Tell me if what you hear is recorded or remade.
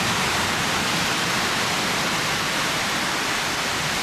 recorded